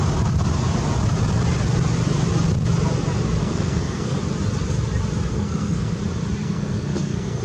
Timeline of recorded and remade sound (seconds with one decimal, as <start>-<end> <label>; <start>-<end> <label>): 0.0-3.4 recorded; 3.4-4.2 remade; 4.2-5.3 recorded; 5.3-6.0 remade; 6.0-6.4 recorded; 6.4-7.4 remade

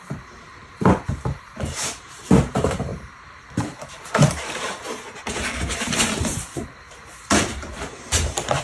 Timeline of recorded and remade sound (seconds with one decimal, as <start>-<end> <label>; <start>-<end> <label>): 0.0-8.6 remade

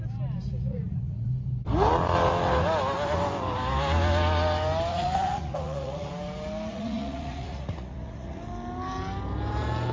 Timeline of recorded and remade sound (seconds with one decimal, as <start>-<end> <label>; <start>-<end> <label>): 0.0-0.5 recorded; 0.5-1.2 remade; 1.2-4.9 recorded; 4.9-6.1 remade; 6.1-6.7 recorded; 6.7-8.4 remade; 8.4-9.9 recorded

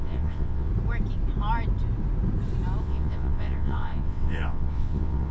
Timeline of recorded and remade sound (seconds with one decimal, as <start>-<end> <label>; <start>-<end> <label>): 0.0-0.7 remade; 0.7-2.8 recorded; 2.8-5.3 remade

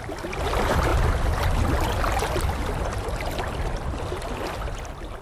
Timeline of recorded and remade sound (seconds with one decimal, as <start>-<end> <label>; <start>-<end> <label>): 0.0-5.2 recorded

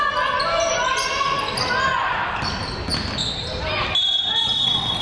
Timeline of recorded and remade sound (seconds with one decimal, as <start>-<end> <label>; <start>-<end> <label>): 0.0-4.4 recorded; 4.4-5.0 remade

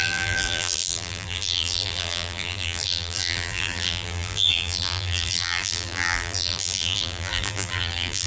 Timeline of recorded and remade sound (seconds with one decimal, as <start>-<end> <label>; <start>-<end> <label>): 0.0-8.3 remade